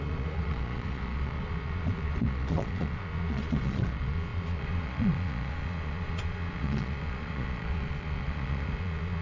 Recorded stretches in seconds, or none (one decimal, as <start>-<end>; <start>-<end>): none